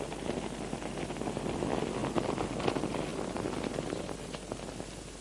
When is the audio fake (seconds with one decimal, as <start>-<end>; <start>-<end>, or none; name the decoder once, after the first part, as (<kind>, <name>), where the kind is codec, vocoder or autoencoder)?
none